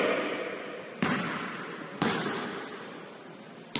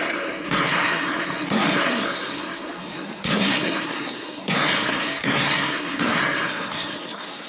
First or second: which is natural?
first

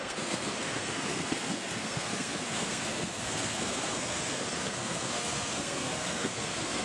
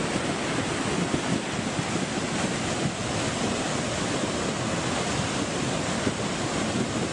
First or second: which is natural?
second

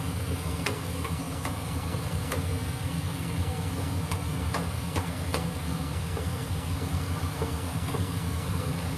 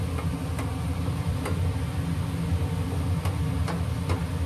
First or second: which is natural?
second